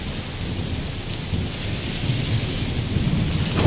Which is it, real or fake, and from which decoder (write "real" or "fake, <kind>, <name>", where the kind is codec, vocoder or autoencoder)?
real